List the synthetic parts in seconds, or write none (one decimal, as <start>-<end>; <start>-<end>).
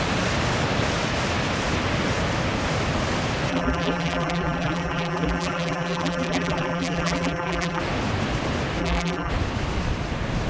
3.5-7.8; 8.8-9.3